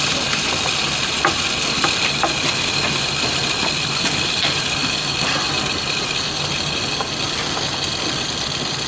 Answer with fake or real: real